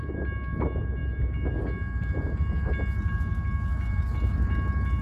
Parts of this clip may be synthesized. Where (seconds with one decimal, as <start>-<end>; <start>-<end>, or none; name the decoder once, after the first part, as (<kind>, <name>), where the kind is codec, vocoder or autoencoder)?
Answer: none